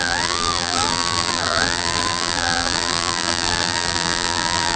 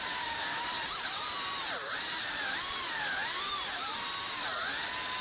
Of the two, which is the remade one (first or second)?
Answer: first